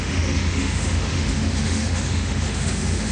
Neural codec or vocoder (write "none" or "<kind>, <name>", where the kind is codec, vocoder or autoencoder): autoencoder, DAC-VAE